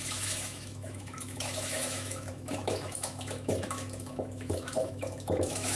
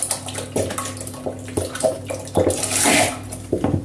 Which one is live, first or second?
second